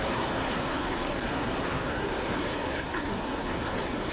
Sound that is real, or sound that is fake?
fake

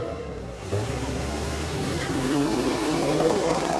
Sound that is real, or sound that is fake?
fake